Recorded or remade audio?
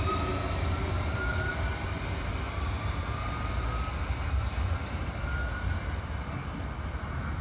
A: recorded